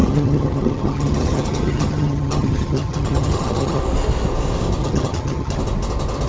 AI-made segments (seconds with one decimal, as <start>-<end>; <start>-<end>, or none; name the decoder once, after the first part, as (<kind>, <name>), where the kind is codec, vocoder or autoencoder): 0.0-3.8 (vocoder, HiFi-GAN); 4.8-5.6